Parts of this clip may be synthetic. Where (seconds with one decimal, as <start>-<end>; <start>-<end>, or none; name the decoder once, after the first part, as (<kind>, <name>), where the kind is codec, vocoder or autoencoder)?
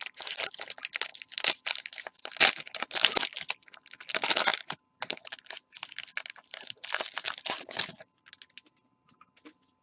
none